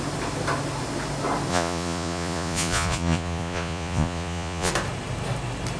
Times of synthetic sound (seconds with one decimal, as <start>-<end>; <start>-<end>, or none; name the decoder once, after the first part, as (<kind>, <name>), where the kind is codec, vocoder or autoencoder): 1.5-4.7 (vocoder, Vocos)